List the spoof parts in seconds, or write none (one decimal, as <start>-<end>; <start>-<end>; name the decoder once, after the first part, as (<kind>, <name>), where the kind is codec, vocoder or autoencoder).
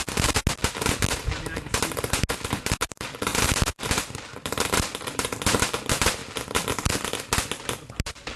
3.3-5.4 (vocoder, BigVGAN v2); 6.2-8.0